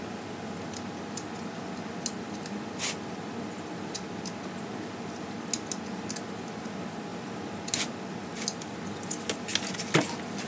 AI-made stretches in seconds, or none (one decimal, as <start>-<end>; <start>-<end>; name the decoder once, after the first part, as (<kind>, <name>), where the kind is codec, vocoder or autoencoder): none